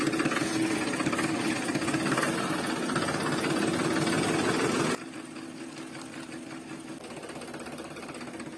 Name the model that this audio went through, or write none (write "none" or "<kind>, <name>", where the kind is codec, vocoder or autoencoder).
none